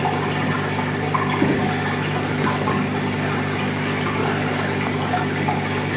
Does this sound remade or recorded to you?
recorded